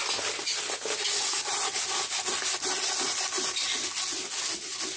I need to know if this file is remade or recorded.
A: recorded